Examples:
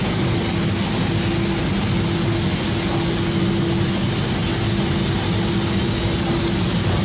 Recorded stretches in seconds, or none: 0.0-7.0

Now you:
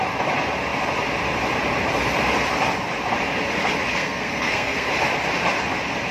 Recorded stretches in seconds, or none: 0.0-4.0; 4.9-6.1

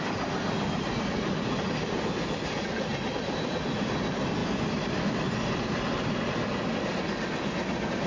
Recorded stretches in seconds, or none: 0.0-8.1

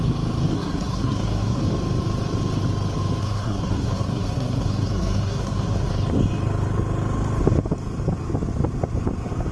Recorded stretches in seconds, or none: 0.0-0.5; 1.6-3.2; 5.9-9.5

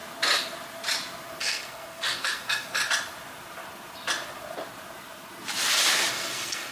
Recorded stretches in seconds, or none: 0.0-1.4; 2.8-6.1